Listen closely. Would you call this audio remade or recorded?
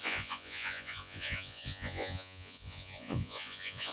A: remade